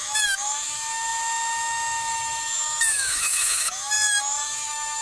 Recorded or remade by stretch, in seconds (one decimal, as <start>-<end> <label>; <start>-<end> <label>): 0.0-5.0 remade